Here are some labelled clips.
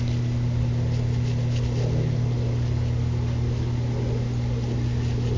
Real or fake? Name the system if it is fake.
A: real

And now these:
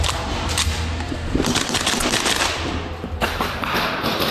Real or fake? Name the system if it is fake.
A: real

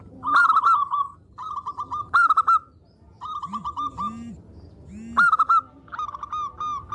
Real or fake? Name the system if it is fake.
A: real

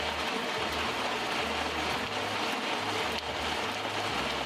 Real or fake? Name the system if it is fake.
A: real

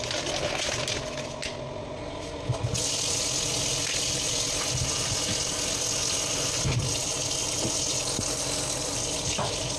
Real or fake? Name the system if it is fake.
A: real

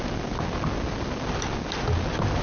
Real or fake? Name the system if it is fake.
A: real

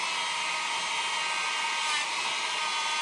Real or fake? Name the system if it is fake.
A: real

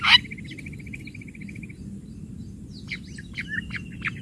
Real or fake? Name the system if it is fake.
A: real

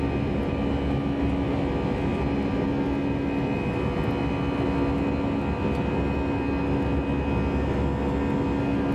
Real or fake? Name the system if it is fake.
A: real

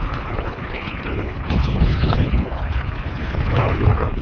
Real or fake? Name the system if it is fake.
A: fake, codec, HILCodec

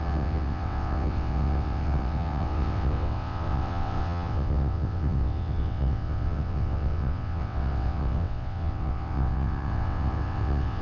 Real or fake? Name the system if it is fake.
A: fake, vocoder, WaveNeXt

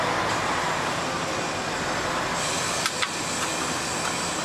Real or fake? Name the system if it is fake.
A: real